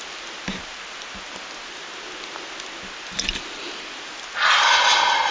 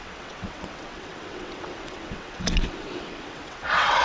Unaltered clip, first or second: first